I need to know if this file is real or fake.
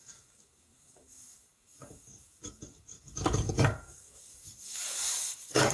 fake